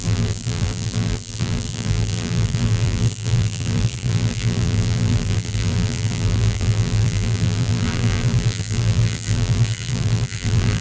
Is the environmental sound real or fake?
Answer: fake